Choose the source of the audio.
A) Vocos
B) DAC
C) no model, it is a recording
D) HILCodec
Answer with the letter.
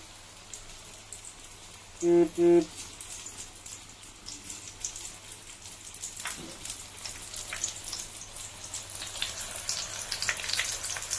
C